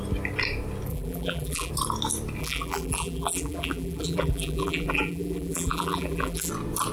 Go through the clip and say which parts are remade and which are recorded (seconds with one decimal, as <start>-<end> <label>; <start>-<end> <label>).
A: 0.0-0.9 recorded; 0.9-1.7 remade; 1.7-2.4 recorded; 2.4-6.5 remade; 6.5-6.9 recorded